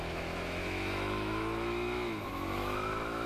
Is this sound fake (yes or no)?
yes